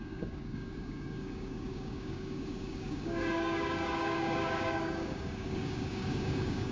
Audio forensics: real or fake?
fake